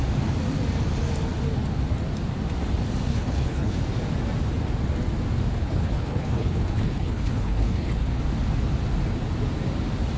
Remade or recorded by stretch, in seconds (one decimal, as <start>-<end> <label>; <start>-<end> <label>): 0.0-3.1 recorded; 3.1-3.8 remade; 3.8-5.5 recorded; 5.5-8.2 remade; 8.2-10.2 recorded